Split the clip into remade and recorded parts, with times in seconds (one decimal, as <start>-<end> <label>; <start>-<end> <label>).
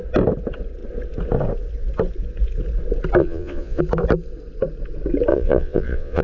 0.0-3.2 recorded; 3.2-3.8 remade; 3.8-5.3 recorded; 5.3-6.2 remade